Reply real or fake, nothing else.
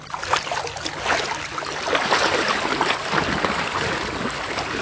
real